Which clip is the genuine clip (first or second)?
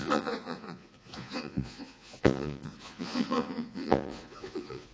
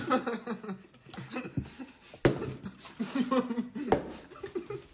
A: second